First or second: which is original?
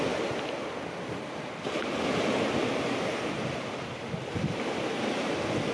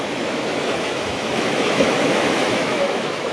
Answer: first